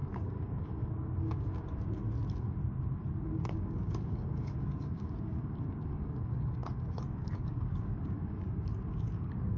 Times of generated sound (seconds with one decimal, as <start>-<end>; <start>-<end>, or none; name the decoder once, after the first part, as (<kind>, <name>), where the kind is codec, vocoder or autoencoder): 0.0-2.0 (codec, DAC); 3.1-9.6